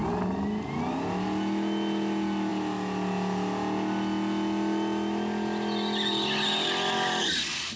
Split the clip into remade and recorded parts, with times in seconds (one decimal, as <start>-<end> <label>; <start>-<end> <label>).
0.0-7.8 recorded